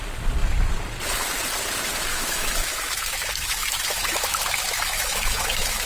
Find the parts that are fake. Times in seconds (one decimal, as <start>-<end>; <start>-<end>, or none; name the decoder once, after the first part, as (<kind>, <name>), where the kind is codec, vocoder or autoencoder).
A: 2.1-5.9 (autoencoder, DAC-VAE)